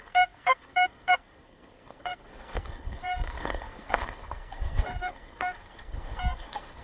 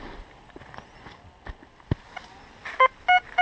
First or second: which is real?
second